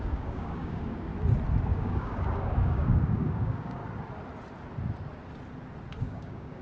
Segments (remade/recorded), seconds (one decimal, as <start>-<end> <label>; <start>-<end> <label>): 0.0-1.1 remade; 1.1-1.7 recorded; 1.7-3.8 remade; 3.8-6.0 recorded; 6.0-6.6 remade